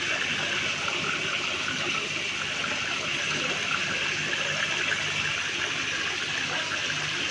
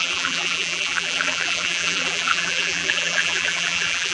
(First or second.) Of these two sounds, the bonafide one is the first